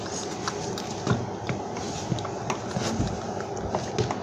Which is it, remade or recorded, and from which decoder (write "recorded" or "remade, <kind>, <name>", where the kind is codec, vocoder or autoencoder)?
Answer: recorded